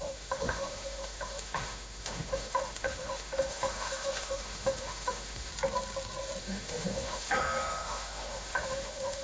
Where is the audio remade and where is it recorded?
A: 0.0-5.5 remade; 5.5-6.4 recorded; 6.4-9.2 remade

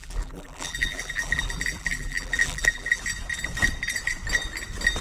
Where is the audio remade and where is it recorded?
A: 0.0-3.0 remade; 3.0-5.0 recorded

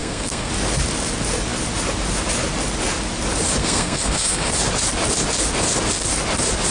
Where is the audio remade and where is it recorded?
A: 0.0-0.5 remade; 0.5-3.6 recorded; 3.6-4.5 remade; 4.5-6.7 recorded

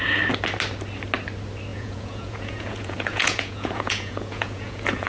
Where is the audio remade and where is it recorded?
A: 0.0-1.7 recorded; 1.7-5.1 remade